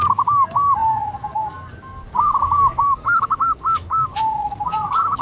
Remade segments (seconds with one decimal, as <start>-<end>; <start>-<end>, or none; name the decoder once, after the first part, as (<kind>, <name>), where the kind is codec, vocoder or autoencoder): 0.0-5.2 (codec, DAC)

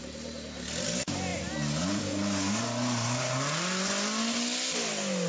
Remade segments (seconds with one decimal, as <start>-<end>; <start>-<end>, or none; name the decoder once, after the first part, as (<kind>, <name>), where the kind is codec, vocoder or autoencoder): none